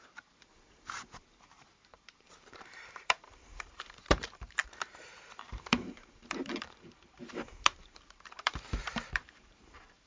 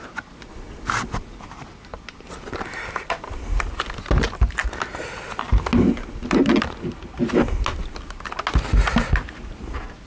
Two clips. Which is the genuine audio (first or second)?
second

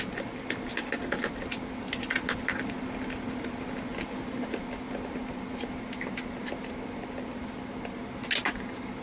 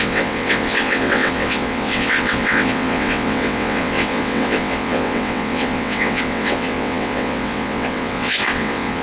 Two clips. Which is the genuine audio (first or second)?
first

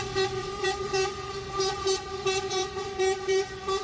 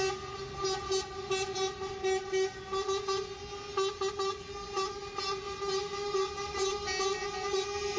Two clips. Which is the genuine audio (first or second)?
second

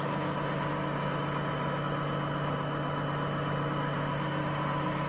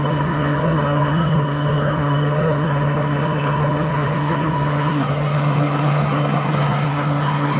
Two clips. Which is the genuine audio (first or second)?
first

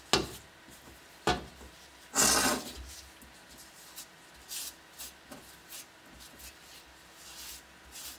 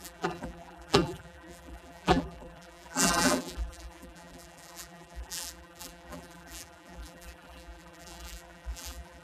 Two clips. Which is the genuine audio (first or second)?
first